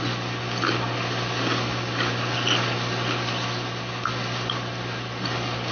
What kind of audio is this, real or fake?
real